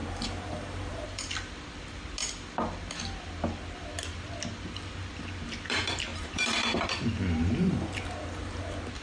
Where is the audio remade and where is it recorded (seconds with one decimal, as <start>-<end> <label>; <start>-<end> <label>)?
0.0-1.3 remade; 1.3-6.1 recorded; 6.1-8.6 remade; 8.6-9.0 recorded